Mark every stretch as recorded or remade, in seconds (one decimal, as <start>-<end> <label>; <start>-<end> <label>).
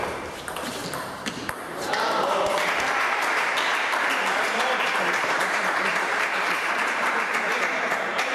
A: 0.0-0.8 remade; 0.8-1.6 recorded; 1.6-3.7 remade; 3.7-4.3 recorded; 4.3-8.3 remade